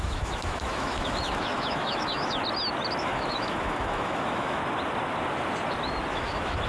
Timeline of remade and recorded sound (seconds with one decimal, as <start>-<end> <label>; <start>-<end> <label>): 0.0-2.4 remade; 2.4-3.0 recorded; 3.0-4.6 remade; 4.6-6.1 recorded; 6.1-6.7 remade